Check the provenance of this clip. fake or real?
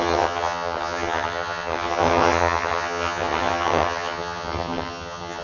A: fake